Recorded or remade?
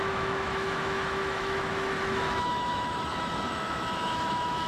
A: remade